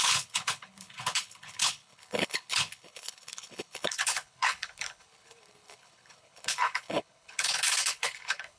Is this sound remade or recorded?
remade